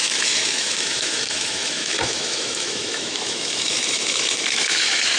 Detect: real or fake fake